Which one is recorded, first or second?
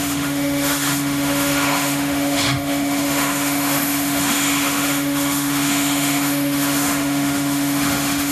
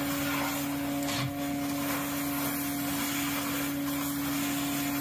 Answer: second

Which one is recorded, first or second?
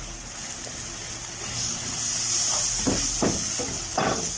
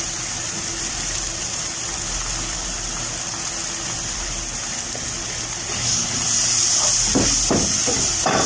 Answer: first